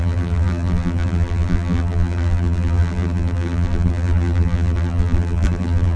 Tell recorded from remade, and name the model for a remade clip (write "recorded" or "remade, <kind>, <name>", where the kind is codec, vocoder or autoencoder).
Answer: remade, vocoder, BigVGAN v2